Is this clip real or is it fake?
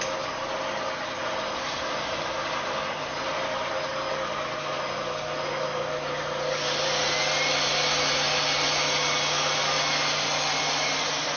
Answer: real